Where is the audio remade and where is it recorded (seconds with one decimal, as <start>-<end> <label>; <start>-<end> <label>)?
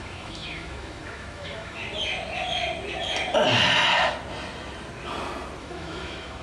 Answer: 0.0-1.8 remade; 1.8-5.6 recorded; 5.6-6.4 remade